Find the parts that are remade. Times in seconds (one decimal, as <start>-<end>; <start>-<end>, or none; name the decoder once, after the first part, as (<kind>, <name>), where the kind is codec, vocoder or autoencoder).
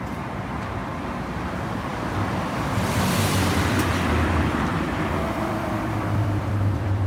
0.0-0.8 (vocoder, BigVGAN v2); 1.4-7.1